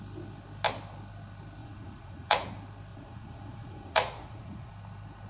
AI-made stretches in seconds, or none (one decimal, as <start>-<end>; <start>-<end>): 1.6-2.5; 2.9-4.7